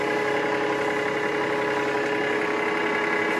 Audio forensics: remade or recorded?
recorded